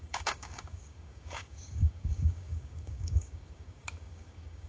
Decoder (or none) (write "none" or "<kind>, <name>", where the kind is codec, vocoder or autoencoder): codec, DAC